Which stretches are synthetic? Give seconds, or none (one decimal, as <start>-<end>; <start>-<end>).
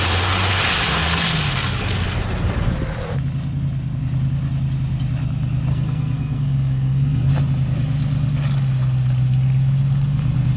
5.7-7.3